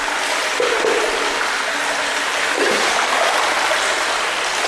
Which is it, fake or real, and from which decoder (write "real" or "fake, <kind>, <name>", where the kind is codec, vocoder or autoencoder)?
real